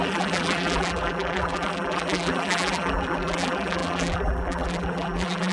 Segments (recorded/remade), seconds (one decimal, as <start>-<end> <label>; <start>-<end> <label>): 0.0-5.5 remade